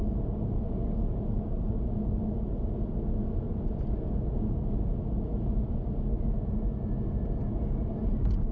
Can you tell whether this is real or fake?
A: real